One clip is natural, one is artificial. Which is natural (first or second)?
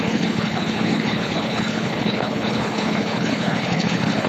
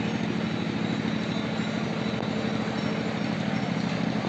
second